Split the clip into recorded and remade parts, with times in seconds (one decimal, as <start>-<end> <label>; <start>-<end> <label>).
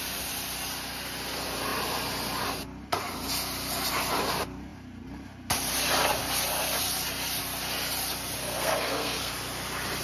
0.0-8.4 recorded; 8.4-9.3 remade; 9.3-10.0 recorded